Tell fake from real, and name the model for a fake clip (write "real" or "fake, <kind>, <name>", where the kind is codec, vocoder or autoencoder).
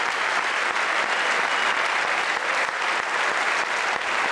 real